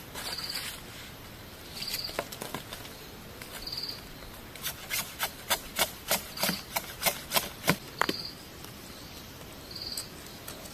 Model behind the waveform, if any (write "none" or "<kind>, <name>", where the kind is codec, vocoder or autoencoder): none